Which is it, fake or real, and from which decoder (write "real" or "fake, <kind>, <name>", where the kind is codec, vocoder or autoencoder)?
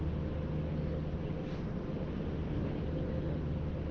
real